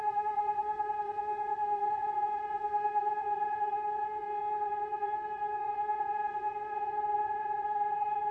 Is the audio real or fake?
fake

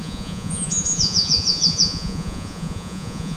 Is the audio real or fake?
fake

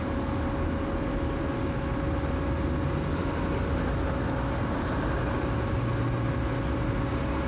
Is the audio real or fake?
real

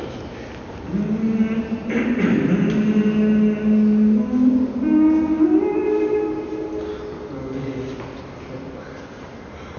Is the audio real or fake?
real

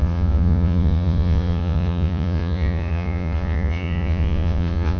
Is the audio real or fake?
fake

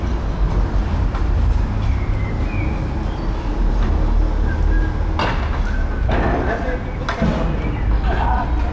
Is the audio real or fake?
real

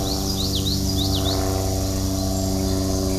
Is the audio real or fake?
real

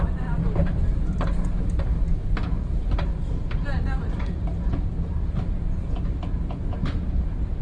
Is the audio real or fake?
real